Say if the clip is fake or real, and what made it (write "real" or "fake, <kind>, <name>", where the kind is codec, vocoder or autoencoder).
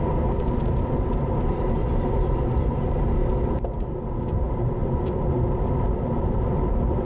real